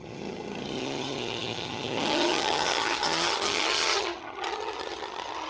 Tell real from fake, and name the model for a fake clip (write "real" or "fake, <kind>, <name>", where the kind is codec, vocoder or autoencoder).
fake, vocoder, HiFi-GAN